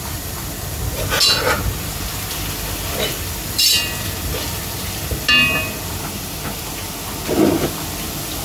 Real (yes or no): yes